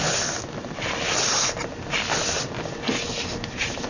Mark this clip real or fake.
real